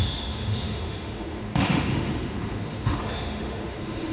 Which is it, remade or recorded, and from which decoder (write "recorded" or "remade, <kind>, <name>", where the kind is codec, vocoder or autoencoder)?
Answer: remade, autoencoder, DAC-VAE